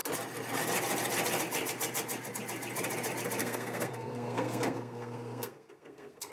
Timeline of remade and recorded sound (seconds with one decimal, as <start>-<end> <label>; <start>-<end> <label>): 0.0-3.4 recorded; 3.4-6.3 remade